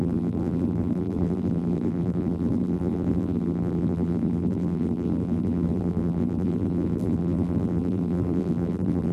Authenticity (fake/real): fake